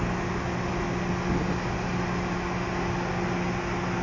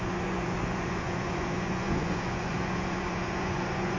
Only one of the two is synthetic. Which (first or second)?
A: second